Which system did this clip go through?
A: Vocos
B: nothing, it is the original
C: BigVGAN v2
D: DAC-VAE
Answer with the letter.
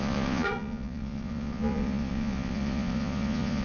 A